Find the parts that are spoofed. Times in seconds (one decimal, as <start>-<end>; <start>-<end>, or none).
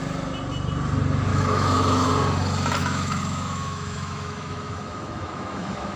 1.3-2.1; 2.8-6.0